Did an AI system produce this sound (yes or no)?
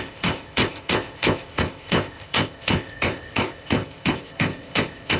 yes